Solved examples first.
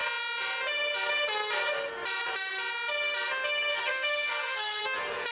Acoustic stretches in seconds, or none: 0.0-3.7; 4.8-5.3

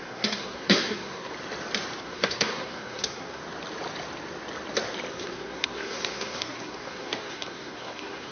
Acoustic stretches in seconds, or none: 1.3-2.0; 3.4-5.1

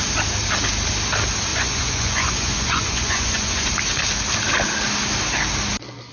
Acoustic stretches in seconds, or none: 0.0-1.5; 3.7-6.1